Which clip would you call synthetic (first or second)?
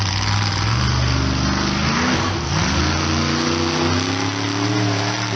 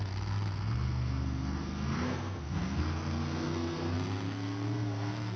second